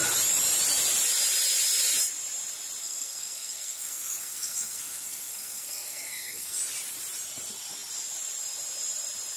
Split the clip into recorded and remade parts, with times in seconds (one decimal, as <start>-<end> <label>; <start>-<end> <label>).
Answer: 0.0-2.8 recorded; 2.8-6.6 remade; 6.6-9.4 recorded